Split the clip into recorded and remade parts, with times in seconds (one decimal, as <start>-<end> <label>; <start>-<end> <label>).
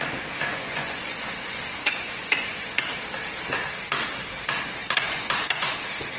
0.0-0.5 recorded; 0.5-2.8 remade; 2.8-4.8 recorded; 4.8-5.7 remade; 5.7-6.2 recorded